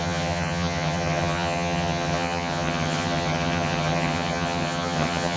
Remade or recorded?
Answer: remade